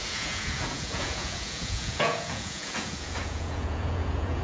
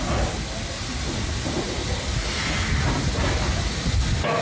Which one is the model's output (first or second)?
first